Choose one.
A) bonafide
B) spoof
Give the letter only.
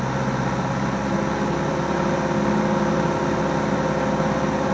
A